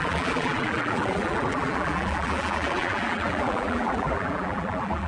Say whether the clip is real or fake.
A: fake